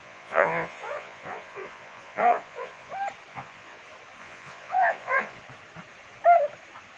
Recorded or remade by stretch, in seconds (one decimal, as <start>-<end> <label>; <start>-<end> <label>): 0.0-2.9 remade; 2.9-3.3 recorded; 3.3-3.8 remade; 3.8-4.2 recorded; 4.2-5.4 remade; 5.4-7.0 recorded